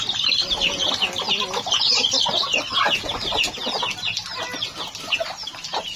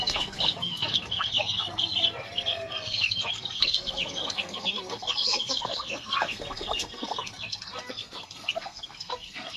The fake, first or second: second